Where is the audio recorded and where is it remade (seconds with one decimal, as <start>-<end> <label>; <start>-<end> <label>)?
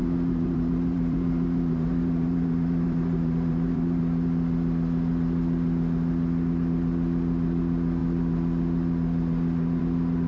0.0-4.0 remade; 4.0-10.3 recorded